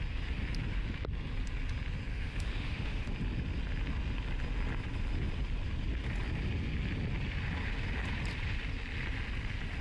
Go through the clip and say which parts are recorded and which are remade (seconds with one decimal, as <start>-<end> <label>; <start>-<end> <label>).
0.0-2.1 recorded; 2.1-3.1 remade; 3.1-9.8 recorded